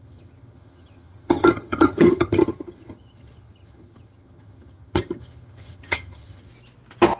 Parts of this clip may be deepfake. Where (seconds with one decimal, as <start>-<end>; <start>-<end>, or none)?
0.0-6.5